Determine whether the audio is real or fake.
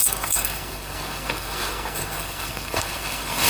fake